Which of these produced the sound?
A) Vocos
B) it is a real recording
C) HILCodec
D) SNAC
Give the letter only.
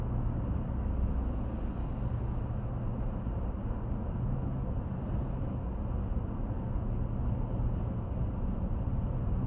B